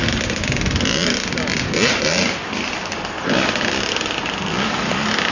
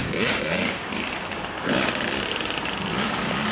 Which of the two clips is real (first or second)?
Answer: first